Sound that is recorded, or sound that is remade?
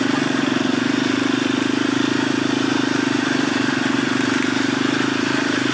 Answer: recorded